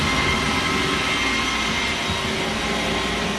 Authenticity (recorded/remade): recorded